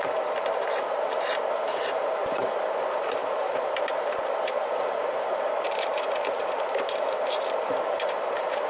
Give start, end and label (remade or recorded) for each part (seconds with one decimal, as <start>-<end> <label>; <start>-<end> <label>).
0.0-2.2 remade; 2.2-2.8 recorded; 2.8-8.7 remade